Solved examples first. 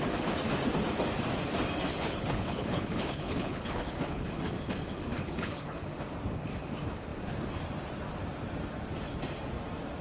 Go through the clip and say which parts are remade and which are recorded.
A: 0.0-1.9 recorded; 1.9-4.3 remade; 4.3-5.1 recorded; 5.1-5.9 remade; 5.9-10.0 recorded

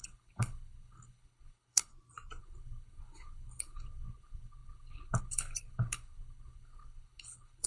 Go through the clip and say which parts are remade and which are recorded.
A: 0.0-1.9 remade; 1.9-2.4 recorded; 2.4-7.7 remade

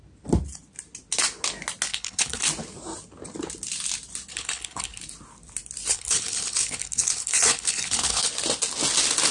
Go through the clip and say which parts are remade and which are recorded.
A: 0.0-1.9 recorded; 1.9-2.4 remade; 2.4-4.3 recorded; 4.3-5.0 remade; 5.0-5.9 recorded; 5.9-8.3 remade; 8.3-9.3 recorded

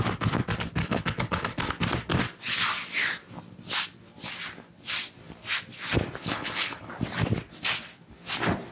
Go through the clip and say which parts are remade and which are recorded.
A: 0.0-0.8 recorded; 0.8-1.7 remade; 1.7-6.2 recorded; 6.2-6.9 remade; 6.9-8.7 recorded

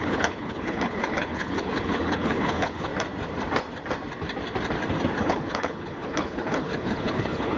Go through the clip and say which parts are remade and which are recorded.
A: 0.0-2.9 remade; 2.9-5.2 recorded; 5.2-7.6 remade

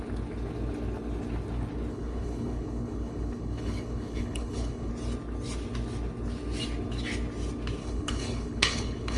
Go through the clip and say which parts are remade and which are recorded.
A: 0.0-1.9 recorded; 1.9-4.9 remade; 4.9-7.8 recorded; 7.8-9.2 remade

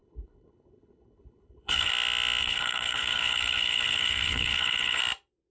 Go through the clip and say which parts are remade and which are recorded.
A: 0.0-1.9 remade; 1.9-2.4 recorded; 2.4-5.0 remade; 5.0-5.5 recorded

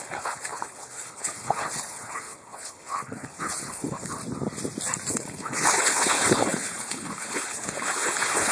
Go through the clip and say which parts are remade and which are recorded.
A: 0.0-4.2 remade; 4.2-5.1 recorded; 5.1-8.5 remade